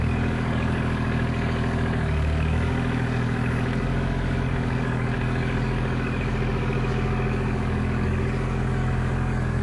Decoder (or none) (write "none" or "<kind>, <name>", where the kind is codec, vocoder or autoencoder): codec, DAC